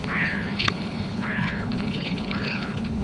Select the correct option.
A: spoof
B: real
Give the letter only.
A